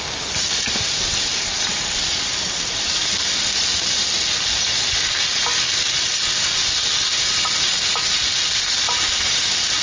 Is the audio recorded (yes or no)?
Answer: yes